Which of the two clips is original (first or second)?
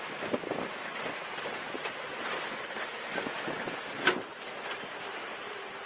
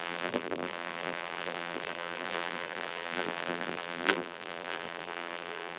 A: first